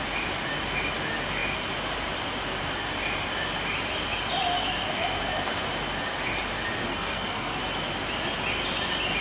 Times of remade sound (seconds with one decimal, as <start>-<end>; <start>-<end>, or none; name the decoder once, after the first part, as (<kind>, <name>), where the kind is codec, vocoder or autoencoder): 6.9-7.6 (codec, SNAC)